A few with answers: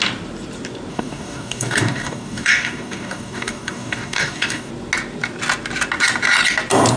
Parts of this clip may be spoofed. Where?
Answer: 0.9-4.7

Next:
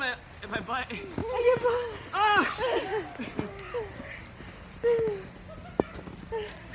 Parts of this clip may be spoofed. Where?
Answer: none

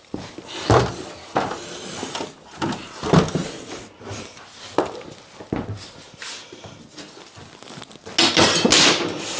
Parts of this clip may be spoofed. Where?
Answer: none

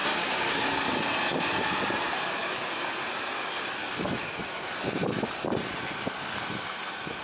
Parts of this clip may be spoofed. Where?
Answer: 0.0-0.7

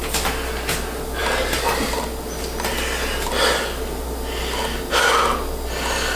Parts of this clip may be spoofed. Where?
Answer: none

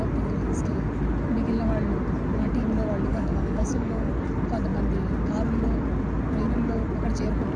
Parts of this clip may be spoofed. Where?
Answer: 3.1-4.1